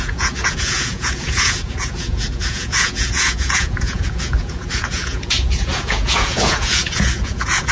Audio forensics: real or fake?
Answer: fake